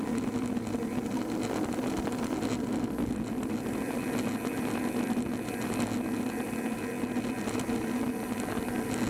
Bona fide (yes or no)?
yes